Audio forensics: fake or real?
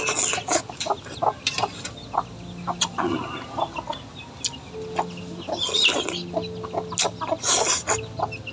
real